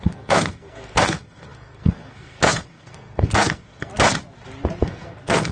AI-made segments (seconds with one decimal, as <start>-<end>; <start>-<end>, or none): 0.0-3.9; 4.8-5.5